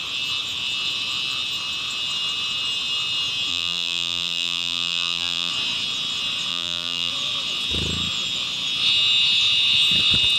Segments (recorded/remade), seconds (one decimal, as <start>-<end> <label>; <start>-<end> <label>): 0.0-3.5 recorded; 3.5-5.5 remade; 5.5-6.5 recorded; 6.5-7.1 remade; 7.1-10.4 recorded